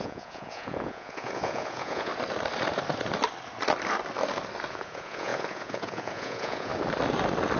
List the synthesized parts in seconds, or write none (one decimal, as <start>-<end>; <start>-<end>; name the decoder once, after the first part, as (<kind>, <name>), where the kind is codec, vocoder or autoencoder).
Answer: 0.0-2.1 (vocoder, Vocos); 4.7-6.7